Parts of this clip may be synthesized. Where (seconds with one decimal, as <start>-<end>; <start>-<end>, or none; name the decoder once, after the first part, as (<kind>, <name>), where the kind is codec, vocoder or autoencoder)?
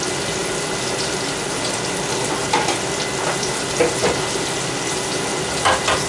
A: none